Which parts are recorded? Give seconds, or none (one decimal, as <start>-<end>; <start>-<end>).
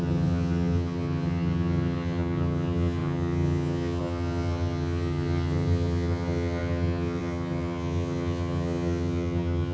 none